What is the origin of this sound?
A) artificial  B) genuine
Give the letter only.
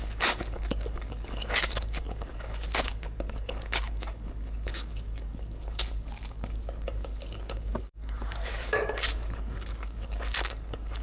A